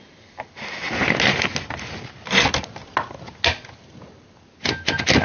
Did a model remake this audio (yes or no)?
no